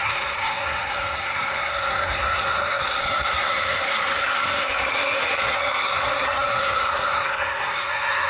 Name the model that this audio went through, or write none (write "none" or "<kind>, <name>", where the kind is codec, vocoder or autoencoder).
codec, SNAC